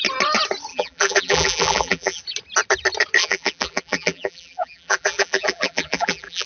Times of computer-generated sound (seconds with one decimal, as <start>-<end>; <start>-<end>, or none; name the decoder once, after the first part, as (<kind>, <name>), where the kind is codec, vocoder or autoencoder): 0.7-2.2 (vocoder, BigVGAN v2); 3.2-6.5